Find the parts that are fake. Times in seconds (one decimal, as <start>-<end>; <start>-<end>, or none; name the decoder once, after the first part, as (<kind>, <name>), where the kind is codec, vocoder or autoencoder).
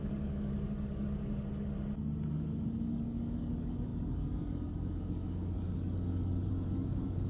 0.0-1.5 (codec, DAC); 2.3-7.3